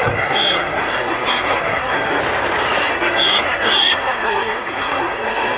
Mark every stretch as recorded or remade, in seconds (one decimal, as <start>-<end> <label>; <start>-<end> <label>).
0.0-2.2 remade; 2.2-2.8 recorded; 2.8-5.6 remade

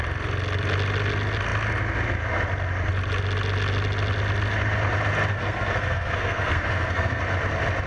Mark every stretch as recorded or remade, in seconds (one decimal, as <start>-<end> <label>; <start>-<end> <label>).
0.0-5.3 recorded; 5.3-7.2 remade; 7.2-7.9 recorded

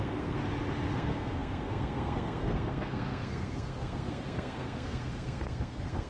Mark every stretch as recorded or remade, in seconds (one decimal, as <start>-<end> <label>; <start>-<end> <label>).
0.0-0.4 remade; 0.4-0.9 recorded; 0.9-6.1 remade